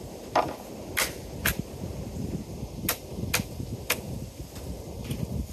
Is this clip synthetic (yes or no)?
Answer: no